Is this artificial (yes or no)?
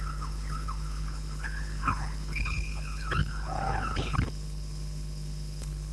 yes